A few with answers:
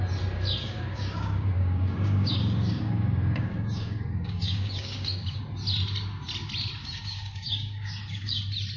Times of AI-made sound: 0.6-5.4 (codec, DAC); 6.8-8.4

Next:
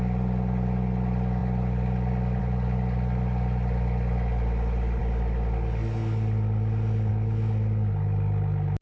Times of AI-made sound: none

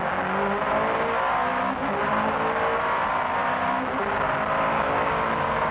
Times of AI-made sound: 4.7-5.7 (codec, DAC)

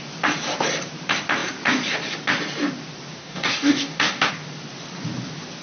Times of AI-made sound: 3.2-4.3 (codec, DAC)

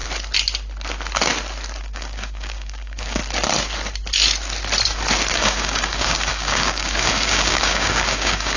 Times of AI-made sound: 1.8-3.2 (codec, DAC); 5.3-8.6

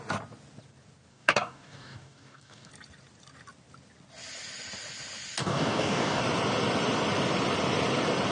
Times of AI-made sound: 1.1-2.7 (codec, DAC); 5.4-6.2

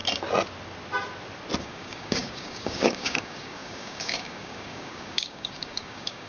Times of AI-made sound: 1.6-6.3 (codec, DAC)

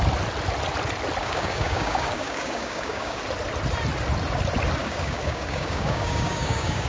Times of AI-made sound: 1.2-3.2 (codec, DAC); 4.8-6.9